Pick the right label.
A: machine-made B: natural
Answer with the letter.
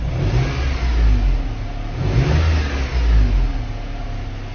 B